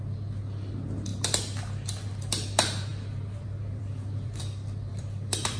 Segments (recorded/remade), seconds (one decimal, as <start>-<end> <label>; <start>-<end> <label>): 0.0-2.9 recorded; 2.9-4.4 remade; 4.4-4.9 recorded; 4.9-5.6 remade